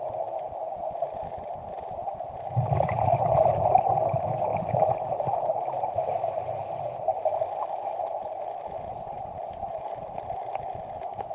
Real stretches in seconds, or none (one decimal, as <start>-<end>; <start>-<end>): 0.0-11.3

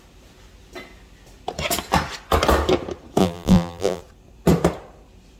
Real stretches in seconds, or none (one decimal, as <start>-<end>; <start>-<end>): 0.0-3.2; 4.0-5.4

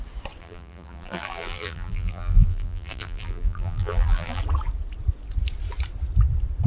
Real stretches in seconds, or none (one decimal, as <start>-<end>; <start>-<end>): 0.0-0.4; 4.4-6.7